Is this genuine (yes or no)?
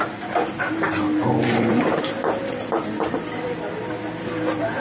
yes